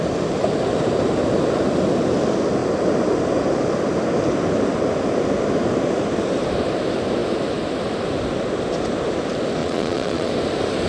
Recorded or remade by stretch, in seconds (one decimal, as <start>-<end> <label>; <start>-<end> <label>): 0.0-9.6 recorded; 9.6-10.3 remade; 10.3-10.9 recorded